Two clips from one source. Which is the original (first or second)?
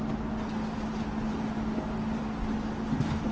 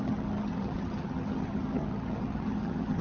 first